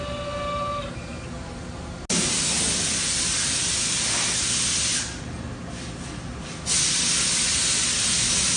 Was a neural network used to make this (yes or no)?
no